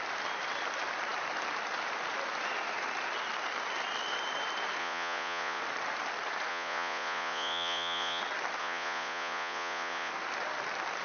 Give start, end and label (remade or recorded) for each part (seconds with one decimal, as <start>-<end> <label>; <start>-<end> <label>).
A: 0.0-4.8 recorded; 4.8-5.6 remade; 5.6-6.5 recorded; 6.5-8.2 remade; 8.2-8.6 recorded; 8.6-10.1 remade; 10.1-11.0 recorded